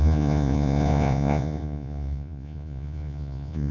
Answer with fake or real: fake